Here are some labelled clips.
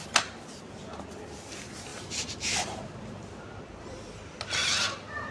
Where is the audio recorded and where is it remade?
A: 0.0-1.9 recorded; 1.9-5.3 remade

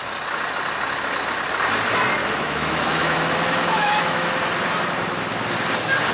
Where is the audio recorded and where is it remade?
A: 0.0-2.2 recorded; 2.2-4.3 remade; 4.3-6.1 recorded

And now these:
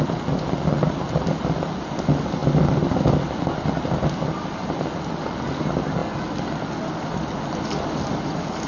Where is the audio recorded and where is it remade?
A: 0.0-8.7 recorded

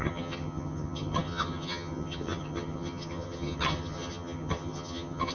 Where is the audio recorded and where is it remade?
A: 0.0-5.3 remade

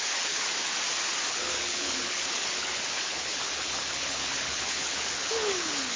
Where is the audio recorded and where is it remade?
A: 0.0-0.5 remade; 0.5-1.3 recorded; 1.3-6.0 remade

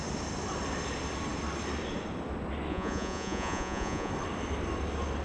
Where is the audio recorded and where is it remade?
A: 0.0-2.7 recorded; 2.7-4.1 remade; 4.1-5.2 recorded